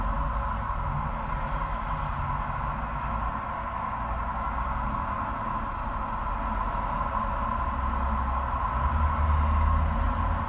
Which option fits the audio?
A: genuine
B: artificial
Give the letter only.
A